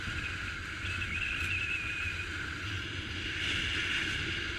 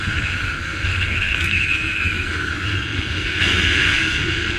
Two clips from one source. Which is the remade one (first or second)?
second